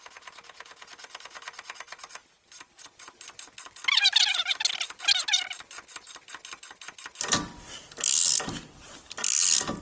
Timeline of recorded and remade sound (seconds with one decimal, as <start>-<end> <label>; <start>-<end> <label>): 0.0-2.2 recorded; 2.2-5.0 remade; 5.0-9.8 recorded